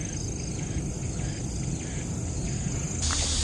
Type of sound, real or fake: real